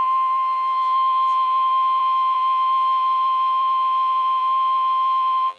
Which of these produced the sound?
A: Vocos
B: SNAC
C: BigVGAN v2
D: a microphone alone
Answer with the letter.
C